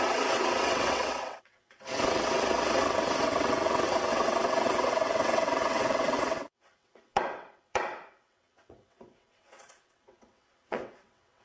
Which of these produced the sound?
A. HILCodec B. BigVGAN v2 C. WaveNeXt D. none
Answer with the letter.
C